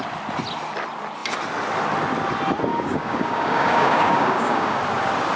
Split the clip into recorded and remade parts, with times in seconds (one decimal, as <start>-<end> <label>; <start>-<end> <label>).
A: 0.0-2.7 recorded; 2.7-4.8 remade; 4.8-5.4 recorded